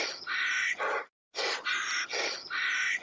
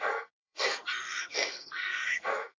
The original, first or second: first